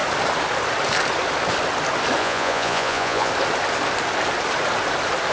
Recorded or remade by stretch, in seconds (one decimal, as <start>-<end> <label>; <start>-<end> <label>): 0.0-2.2 recorded; 2.2-3.3 remade; 3.3-5.3 recorded